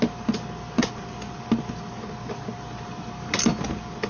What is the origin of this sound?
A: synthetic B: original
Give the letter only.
B